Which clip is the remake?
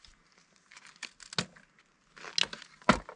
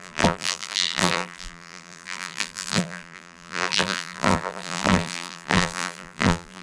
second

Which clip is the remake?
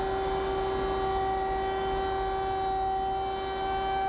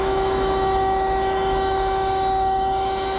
second